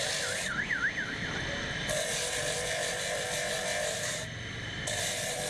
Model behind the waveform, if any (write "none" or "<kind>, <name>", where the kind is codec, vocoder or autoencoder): none